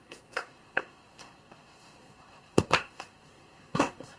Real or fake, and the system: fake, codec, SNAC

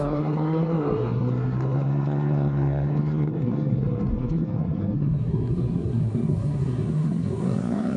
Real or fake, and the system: fake, codec, SNAC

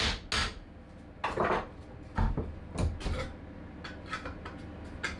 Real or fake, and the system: real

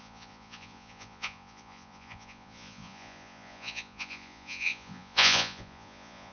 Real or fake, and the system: fake, vocoder, Vocos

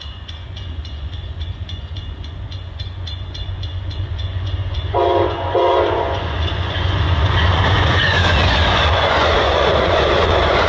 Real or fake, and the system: fake, vocoder, Vocos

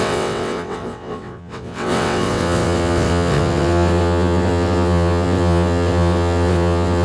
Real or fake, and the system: fake, vocoder, WaveNeXt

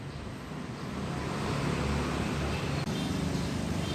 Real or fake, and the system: real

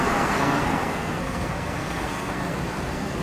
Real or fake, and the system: fake, codec, SNAC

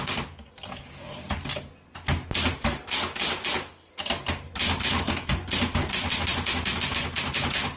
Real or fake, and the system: real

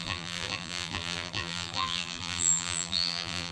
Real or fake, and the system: fake, vocoder, BigVGAN v2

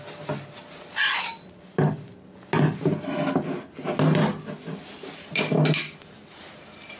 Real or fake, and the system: real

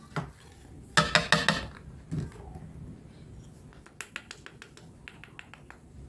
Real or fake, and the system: real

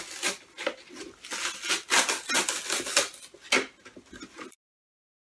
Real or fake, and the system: real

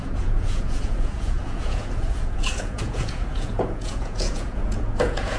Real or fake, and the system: fake, vocoder, Vocos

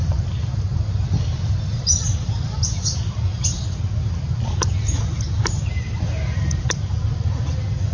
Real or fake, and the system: real